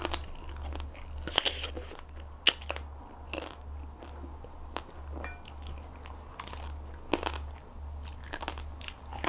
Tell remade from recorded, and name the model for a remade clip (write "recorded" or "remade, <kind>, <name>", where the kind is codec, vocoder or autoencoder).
recorded